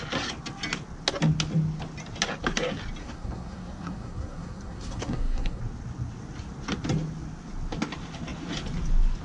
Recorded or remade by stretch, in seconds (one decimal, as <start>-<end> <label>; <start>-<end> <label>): 0.0-3.0 recorded; 3.0-5.6 remade; 5.6-9.2 recorded